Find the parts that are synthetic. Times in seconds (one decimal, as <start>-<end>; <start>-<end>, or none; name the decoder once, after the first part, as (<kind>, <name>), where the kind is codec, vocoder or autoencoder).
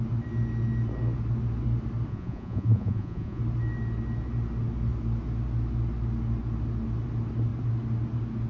2.1-3.4 (vocoder, Vocos)